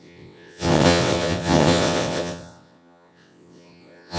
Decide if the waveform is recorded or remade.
remade